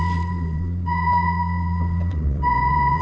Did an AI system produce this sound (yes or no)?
yes